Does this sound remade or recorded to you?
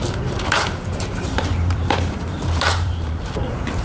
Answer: remade